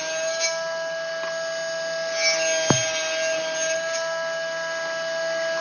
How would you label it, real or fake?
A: real